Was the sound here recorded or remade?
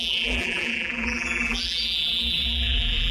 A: remade